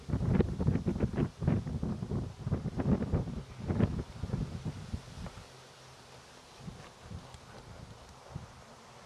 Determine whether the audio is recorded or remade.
recorded